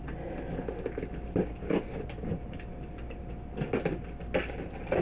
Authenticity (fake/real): real